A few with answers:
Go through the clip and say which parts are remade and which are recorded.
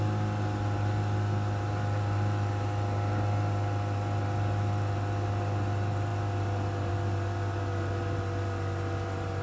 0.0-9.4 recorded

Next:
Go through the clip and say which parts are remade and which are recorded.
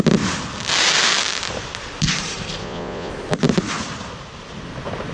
0.0-2.6 recorded; 2.6-3.1 remade; 3.1-5.1 recorded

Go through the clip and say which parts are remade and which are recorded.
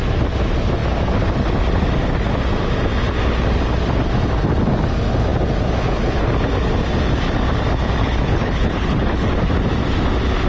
0.0-8.0 recorded; 8.0-9.3 remade; 9.3-10.5 recorded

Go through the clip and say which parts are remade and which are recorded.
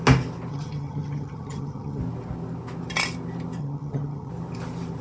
0.0-0.5 recorded; 0.5-2.0 remade; 2.0-3.6 recorded; 3.6-4.3 remade; 4.3-5.0 recorded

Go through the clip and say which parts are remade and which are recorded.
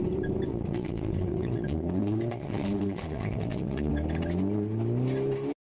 0.0-0.5 recorded; 0.5-3.9 remade; 3.9-5.6 recorded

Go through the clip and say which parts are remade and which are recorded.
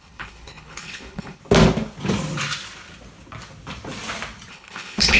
0.0-1.4 remade; 1.4-4.5 recorded; 4.5-5.2 remade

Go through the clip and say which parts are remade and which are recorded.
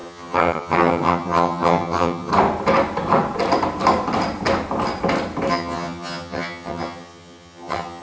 0.0-2.3 remade; 2.3-5.5 recorded; 5.5-8.0 remade